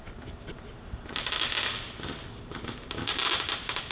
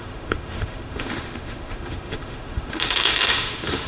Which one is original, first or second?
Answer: first